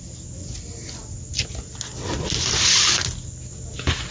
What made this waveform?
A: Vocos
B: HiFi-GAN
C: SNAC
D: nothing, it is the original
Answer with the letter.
D